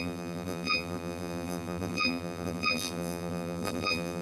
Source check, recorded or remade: remade